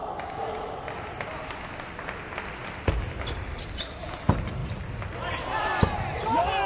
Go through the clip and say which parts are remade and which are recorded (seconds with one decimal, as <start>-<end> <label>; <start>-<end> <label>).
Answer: 0.0-4.6 recorded; 4.6-5.8 remade; 5.8-6.7 recorded